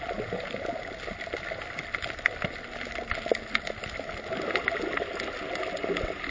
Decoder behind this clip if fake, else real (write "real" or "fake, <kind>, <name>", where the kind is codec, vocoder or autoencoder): real